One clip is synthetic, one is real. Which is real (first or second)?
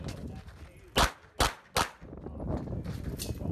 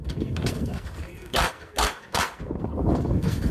first